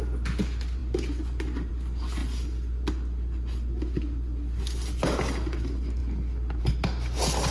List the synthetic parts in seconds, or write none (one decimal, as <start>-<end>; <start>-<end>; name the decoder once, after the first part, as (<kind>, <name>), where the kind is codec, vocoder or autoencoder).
none